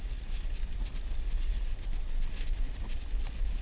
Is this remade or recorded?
recorded